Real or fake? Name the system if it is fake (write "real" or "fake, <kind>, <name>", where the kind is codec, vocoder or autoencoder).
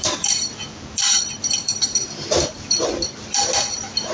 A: fake, vocoder, BigVGAN v2